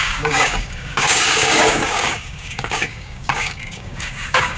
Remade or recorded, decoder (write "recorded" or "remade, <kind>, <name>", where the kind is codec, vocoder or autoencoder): remade, codec, DAC